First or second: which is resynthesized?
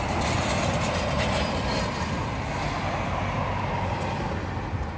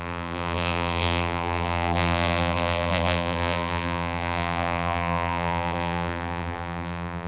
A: second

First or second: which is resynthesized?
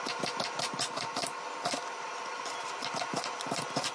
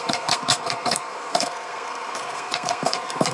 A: second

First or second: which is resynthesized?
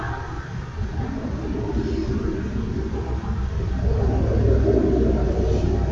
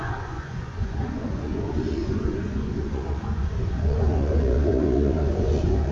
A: second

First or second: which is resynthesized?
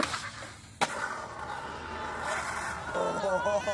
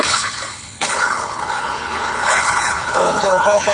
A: second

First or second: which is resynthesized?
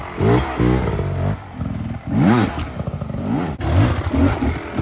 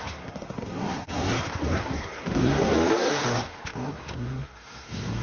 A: second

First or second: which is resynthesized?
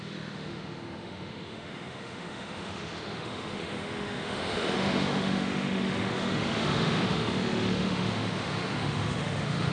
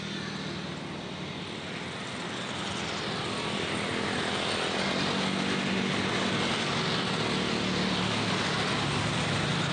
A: first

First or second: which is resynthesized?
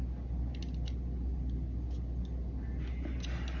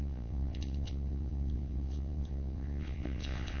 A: second